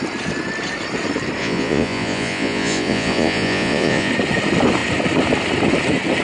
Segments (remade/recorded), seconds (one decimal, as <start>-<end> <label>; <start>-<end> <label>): 0.0-1.4 recorded; 1.4-4.1 remade; 4.1-6.2 recorded